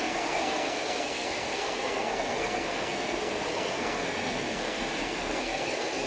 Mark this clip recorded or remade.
remade